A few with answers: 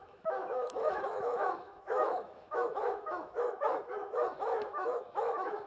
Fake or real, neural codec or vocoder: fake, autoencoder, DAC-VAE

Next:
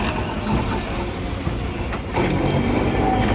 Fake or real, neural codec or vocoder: real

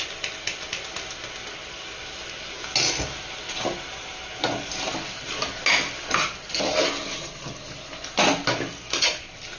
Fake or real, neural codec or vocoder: real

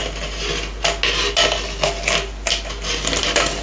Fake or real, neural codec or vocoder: real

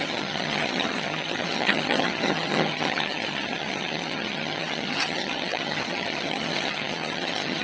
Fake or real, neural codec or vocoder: fake, vocoder, HiFi-GAN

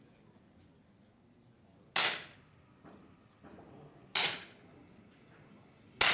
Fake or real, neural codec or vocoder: real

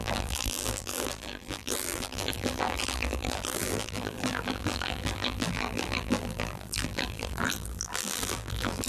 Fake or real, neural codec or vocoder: fake, vocoder, BigVGAN v2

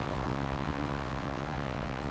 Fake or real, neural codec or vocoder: fake, vocoder, WaveNeXt